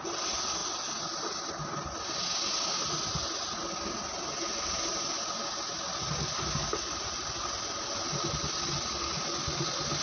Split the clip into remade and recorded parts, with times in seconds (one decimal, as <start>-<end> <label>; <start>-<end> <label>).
0.0-10.0 recorded